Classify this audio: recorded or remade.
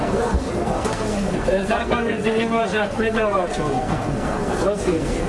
remade